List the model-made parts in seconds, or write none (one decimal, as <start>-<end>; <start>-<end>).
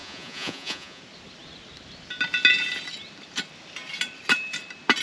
0.0-1.0